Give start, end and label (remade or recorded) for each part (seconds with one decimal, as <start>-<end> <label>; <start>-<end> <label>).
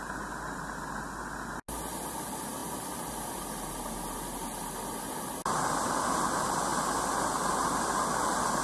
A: 0.0-8.6 recorded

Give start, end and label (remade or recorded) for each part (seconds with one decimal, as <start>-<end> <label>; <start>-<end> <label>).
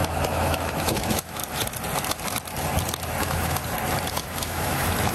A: 0.0-1.4 remade; 1.4-3.2 recorded; 3.2-3.6 remade; 3.6-4.1 recorded; 4.1-5.1 remade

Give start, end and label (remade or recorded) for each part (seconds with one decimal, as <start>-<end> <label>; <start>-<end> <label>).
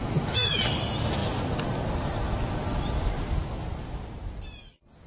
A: 0.0-0.6 remade; 0.6-5.1 recorded